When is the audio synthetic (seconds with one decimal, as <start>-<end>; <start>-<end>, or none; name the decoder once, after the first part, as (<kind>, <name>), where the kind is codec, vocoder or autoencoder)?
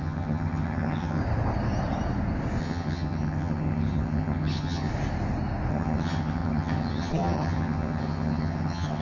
0.0-1.2 (vocoder, HiFi-GAN); 2.6-4.9; 5.7-9.0